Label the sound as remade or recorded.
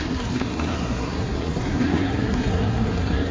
remade